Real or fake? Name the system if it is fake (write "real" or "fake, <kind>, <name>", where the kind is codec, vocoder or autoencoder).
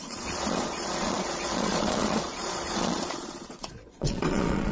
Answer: fake, vocoder, Vocos